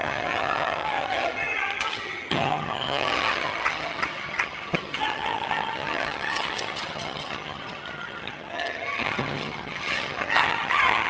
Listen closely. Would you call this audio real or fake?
fake